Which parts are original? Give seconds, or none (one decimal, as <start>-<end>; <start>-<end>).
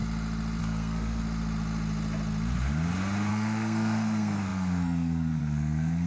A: 0.0-0.6; 1.2-3.3